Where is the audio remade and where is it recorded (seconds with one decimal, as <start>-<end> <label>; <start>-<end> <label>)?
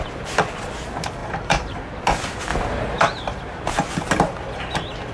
0.0-1.2 recorded; 1.2-1.8 remade; 1.8-5.1 recorded